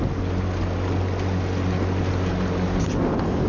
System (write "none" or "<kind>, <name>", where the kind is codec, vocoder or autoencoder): none